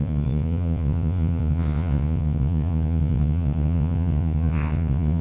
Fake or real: fake